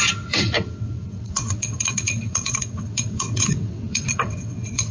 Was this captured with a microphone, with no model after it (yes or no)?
no